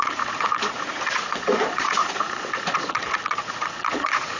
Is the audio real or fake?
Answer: fake